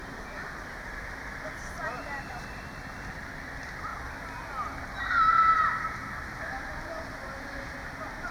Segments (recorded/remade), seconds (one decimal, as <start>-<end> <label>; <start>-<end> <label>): 0.0-8.3 recorded